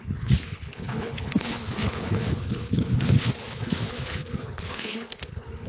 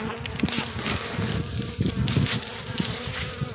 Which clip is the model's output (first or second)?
first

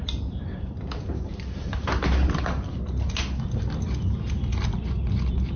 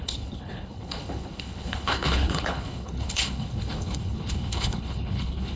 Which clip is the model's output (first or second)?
second